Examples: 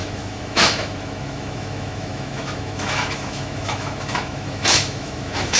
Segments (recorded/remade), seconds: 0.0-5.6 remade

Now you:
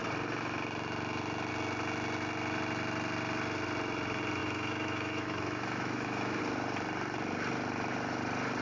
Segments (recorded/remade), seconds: 0.0-4.4 recorded; 4.4-6.4 remade; 6.4-8.6 recorded

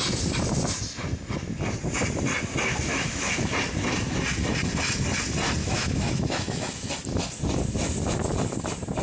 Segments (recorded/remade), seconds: 0.0-2.9 recorded; 2.9-3.5 remade; 3.5-5.6 recorded; 5.6-6.9 remade; 6.9-9.0 recorded

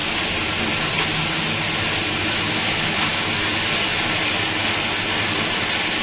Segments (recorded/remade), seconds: 0.0-2.3 recorded; 2.3-3.1 remade; 3.1-6.0 recorded

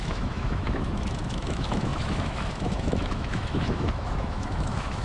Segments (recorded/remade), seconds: 0.0-5.0 remade

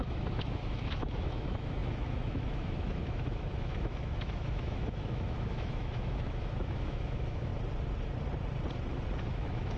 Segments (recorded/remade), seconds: 0.0-7.5 remade; 7.5-9.2 recorded; 9.2-9.8 remade

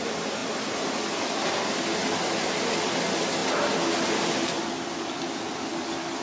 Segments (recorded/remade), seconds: 0.0-6.2 recorded

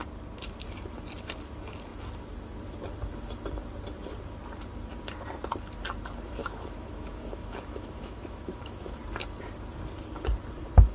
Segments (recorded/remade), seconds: 0.0-6.4 recorded; 6.4-9.0 remade; 9.0-10.9 recorded